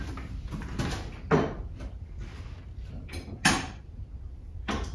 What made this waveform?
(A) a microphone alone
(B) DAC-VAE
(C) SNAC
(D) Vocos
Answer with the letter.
A